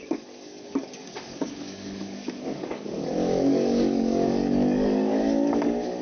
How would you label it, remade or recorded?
remade